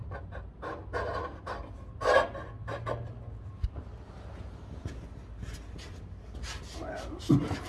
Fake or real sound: real